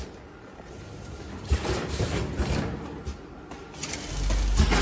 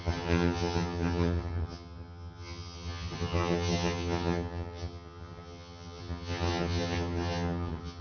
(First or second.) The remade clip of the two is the second